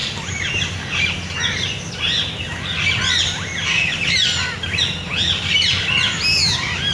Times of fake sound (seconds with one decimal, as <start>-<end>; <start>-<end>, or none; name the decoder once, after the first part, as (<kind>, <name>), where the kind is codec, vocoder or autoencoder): none